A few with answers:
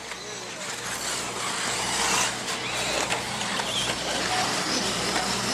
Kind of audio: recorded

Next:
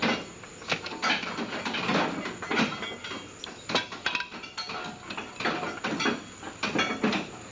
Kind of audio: recorded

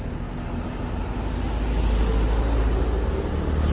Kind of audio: recorded